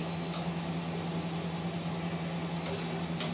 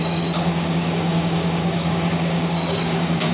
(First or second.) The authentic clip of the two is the first